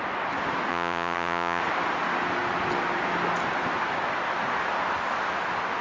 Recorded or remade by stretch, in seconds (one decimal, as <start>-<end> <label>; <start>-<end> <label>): 0.0-0.7 recorded; 0.7-1.6 remade; 1.6-5.8 recorded